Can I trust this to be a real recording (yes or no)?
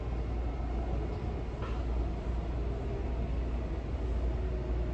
yes